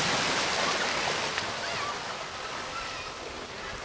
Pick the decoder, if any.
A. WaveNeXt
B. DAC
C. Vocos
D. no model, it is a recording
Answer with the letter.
D